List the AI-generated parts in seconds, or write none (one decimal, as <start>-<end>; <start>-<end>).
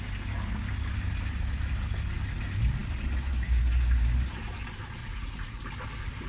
5.0-5.7